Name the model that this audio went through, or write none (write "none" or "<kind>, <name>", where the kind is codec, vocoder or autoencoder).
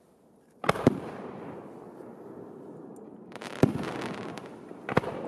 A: none